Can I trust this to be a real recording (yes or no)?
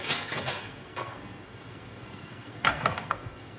no